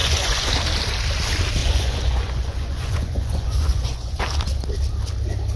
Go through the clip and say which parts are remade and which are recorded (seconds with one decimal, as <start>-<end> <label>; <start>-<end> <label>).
0.0-0.5 remade; 0.5-1.6 recorded; 1.6-4.2 remade; 4.2-5.6 recorded